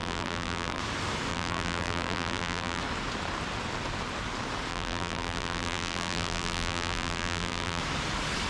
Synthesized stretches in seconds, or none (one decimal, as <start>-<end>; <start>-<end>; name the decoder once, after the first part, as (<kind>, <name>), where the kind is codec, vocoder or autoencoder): 0.0-0.8 (vocoder, BigVGAN v2); 1.3-2.8; 4.7-7.8

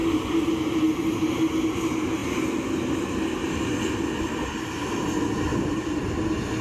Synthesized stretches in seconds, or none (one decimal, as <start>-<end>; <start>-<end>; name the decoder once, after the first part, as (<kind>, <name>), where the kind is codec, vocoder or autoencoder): 0.0-1.3 (vocoder, BigVGAN v2); 5.5-6.0